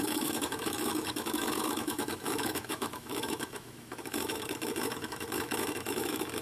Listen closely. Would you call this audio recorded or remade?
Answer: remade